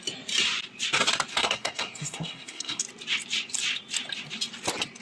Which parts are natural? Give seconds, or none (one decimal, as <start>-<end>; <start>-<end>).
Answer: 0.0-1.3; 2.8-5.0